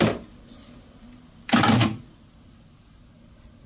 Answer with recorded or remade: recorded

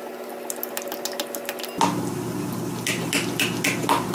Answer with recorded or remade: recorded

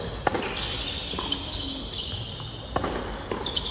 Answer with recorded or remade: recorded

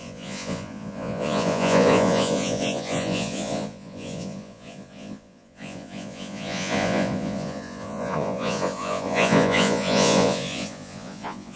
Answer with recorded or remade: remade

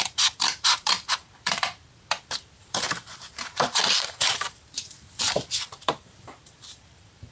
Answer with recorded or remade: remade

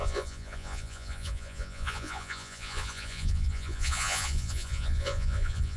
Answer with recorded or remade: remade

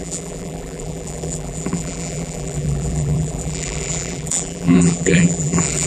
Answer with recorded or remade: remade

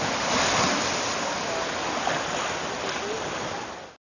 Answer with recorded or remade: recorded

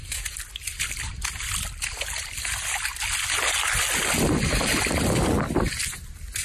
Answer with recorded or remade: recorded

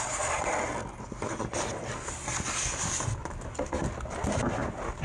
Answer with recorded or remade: recorded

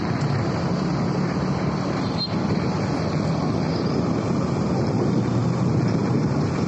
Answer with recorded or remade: remade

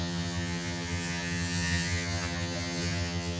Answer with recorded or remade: remade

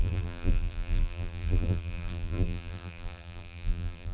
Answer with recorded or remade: remade